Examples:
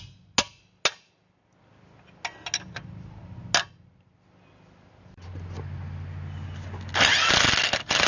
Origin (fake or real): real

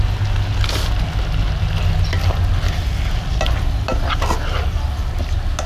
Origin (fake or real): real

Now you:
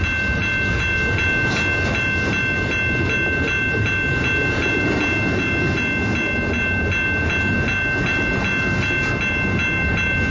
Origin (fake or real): real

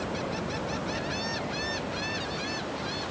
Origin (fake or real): real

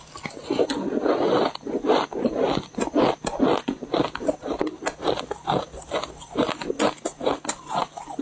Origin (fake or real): real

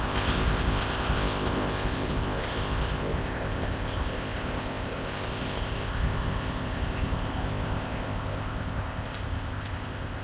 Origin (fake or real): fake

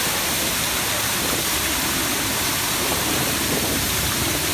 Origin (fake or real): fake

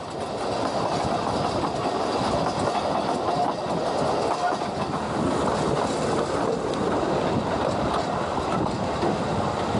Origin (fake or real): real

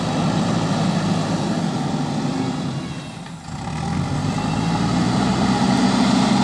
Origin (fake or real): real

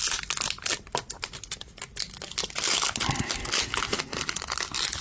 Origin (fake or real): real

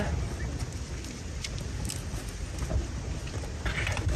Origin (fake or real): real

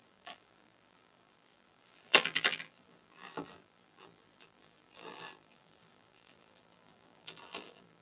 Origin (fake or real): fake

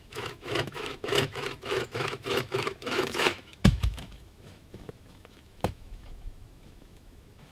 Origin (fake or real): fake